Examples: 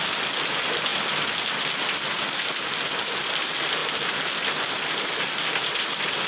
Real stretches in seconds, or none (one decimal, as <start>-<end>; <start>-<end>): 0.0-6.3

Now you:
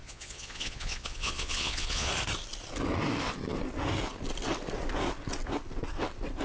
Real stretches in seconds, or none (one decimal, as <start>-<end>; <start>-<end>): 2.1-6.4

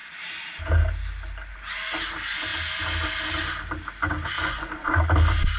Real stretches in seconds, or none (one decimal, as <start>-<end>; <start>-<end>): 0.0-4.4; 5.0-5.6

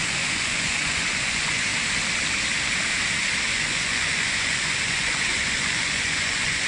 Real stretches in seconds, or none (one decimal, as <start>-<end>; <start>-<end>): 1.7-3.5

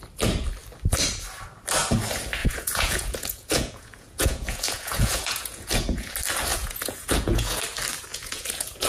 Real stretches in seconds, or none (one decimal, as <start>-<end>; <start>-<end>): 0.0-2.4; 6.1-6.5; 7.6-8.1

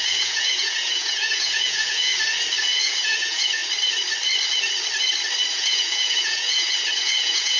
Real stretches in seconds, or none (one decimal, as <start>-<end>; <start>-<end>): 2.1-2.6; 3.6-5.5